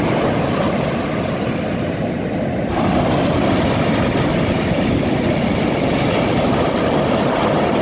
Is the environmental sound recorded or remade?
recorded